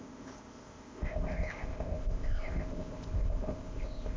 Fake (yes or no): yes